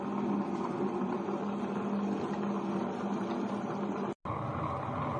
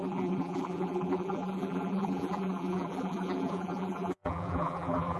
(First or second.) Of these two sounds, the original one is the first